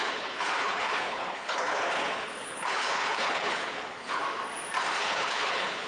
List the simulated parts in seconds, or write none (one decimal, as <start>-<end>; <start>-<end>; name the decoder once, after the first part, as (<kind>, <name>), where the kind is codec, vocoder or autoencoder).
0.0-4.2 (codec, HILCodec); 5.0-5.9